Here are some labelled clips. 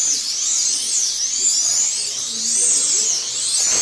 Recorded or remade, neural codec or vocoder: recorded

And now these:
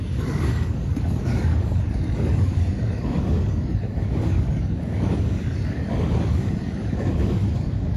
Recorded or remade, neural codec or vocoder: remade, codec, DAC